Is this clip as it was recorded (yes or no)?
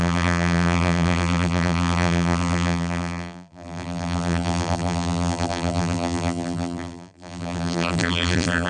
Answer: no